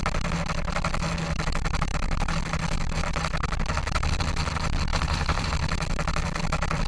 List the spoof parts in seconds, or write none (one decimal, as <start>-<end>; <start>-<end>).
4.9-5.5